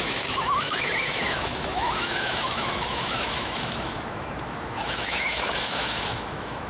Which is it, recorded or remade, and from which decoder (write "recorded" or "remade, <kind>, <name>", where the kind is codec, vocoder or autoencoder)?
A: remade, autoencoder, DAC-VAE